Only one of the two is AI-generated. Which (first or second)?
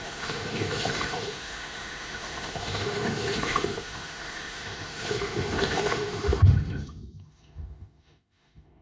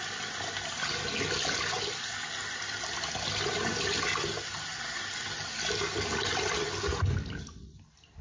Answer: first